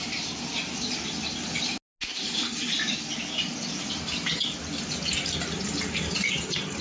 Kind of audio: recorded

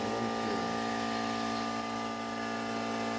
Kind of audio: recorded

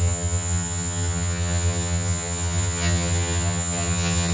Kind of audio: remade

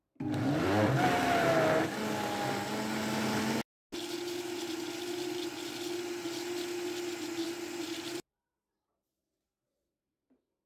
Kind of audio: recorded